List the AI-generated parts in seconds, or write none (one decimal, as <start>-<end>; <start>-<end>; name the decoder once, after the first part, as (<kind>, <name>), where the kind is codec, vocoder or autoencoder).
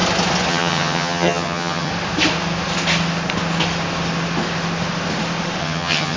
0.5-1.9 (vocoder, HiFi-GAN); 5.6-6.2